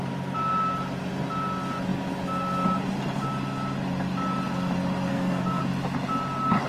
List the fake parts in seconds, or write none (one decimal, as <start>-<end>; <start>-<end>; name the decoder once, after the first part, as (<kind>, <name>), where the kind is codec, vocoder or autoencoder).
5.1-5.6 (codec, SNAC)